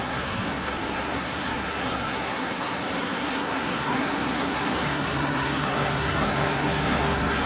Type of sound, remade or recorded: remade